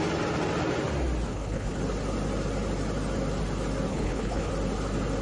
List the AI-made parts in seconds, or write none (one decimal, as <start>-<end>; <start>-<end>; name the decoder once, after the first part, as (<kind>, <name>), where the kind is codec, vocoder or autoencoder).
1.3-1.8 (codec, HILCodec); 3.9-4.5